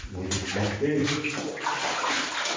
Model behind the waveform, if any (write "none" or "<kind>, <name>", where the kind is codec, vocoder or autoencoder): none